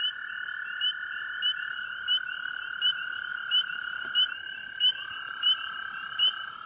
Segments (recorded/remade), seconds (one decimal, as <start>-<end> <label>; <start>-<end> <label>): 0.0-6.7 recorded